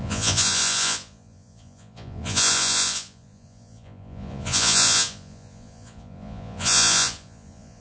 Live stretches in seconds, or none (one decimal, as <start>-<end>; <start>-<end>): none